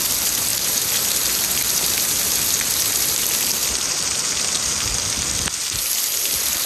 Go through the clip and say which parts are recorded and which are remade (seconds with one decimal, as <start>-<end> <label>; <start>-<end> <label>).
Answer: 0.0-6.7 remade